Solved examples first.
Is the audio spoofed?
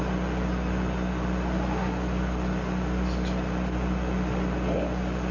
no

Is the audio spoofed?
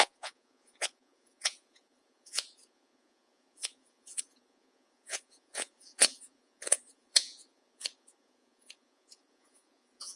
yes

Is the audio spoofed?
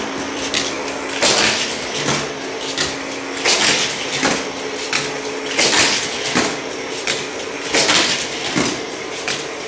no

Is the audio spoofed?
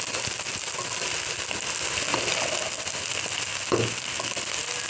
no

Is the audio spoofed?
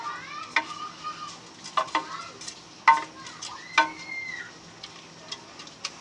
no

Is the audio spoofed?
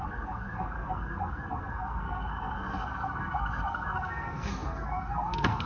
yes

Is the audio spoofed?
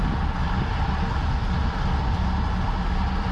no